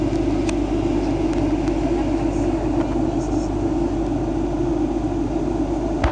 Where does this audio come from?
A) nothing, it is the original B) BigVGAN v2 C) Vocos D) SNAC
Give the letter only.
A